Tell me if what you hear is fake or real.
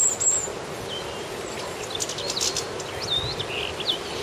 real